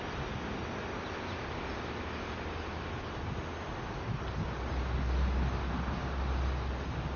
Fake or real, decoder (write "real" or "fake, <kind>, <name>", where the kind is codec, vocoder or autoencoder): real